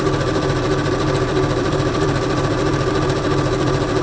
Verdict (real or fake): fake